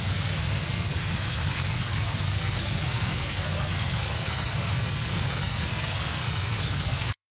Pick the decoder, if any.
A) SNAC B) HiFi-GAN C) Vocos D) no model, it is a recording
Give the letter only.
A